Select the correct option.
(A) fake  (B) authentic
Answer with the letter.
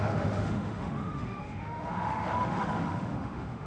A